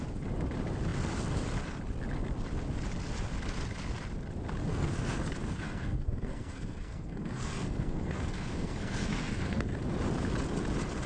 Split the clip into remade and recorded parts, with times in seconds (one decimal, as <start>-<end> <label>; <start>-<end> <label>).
0.0-4.7 recorded; 4.7-9.8 remade; 9.8-11.1 recorded